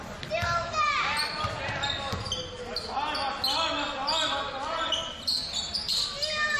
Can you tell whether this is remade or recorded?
recorded